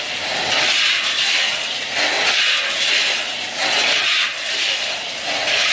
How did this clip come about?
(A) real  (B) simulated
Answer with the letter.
A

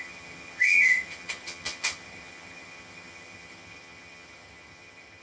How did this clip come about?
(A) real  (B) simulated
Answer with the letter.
B